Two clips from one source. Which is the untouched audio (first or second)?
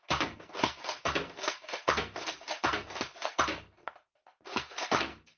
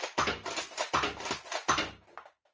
second